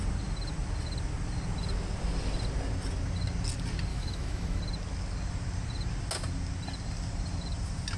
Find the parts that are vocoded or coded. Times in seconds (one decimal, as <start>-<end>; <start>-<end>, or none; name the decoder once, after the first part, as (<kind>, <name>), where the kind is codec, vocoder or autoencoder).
3.9-4.6 (autoencoder, DAC-VAE)